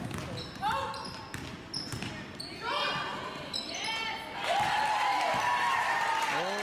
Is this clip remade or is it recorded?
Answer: recorded